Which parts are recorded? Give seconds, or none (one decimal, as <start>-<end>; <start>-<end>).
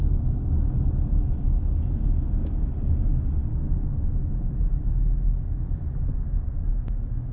0.0-7.3